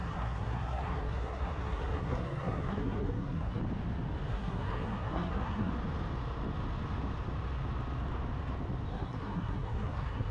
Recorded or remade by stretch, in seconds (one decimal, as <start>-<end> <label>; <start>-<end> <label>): 0.0-3.6 remade; 3.6-4.3 recorded; 4.3-5.7 remade; 5.7-8.9 recorded; 8.9-10.3 remade